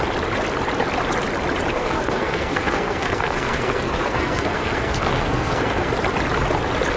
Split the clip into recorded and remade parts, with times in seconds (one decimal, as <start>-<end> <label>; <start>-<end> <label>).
0.0-1.7 recorded; 1.7-5.9 remade; 5.9-7.0 recorded